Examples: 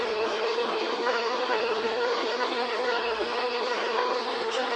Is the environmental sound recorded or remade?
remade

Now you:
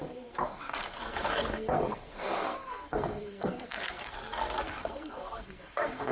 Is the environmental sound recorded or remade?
remade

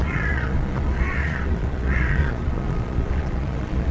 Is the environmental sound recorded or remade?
remade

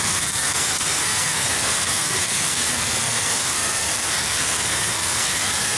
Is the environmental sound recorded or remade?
remade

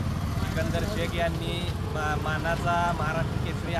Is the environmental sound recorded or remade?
recorded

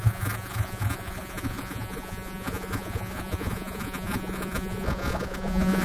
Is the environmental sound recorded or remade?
remade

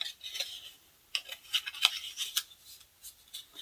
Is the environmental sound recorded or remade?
recorded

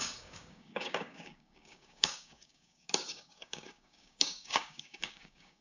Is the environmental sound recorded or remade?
remade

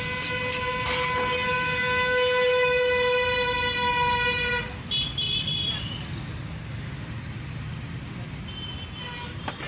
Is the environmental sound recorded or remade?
recorded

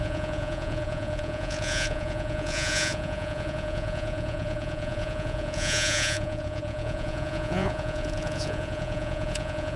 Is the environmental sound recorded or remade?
remade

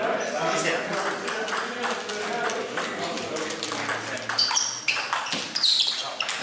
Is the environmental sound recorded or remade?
recorded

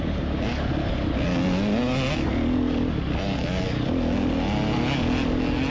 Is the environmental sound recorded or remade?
recorded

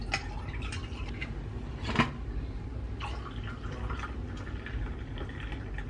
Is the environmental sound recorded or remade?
recorded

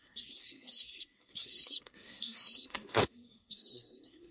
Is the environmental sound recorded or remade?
remade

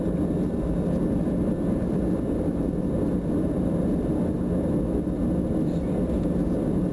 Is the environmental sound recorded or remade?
recorded